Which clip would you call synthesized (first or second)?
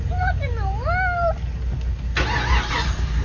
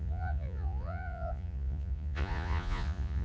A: second